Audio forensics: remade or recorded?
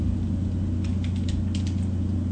recorded